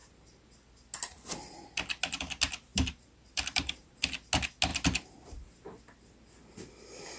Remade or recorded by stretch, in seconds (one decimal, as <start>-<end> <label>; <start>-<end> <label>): 0.0-2.7 recorded; 2.7-3.9 remade; 3.9-7.2 recorded